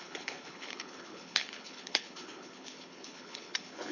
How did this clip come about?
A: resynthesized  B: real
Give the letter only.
A